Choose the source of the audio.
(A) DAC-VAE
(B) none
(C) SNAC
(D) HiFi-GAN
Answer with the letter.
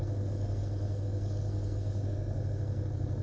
C